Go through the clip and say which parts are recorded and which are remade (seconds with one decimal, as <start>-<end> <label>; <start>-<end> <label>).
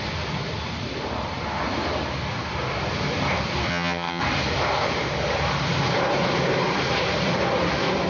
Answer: 0.0-3.7 recorded; 3.7-4.2 remade; 4.2-8.1 recorded